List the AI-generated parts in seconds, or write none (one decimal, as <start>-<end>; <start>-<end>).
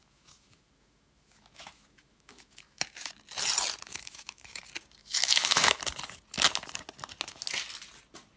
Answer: 0.0-3.1; 3.9-4.6; 5.0-5.8